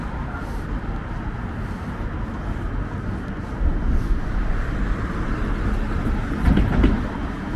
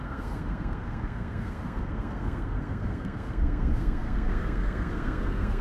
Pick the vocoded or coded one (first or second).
second